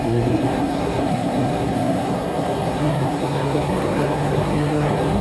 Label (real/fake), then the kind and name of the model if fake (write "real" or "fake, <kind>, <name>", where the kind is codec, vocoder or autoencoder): fake, codec, SNAC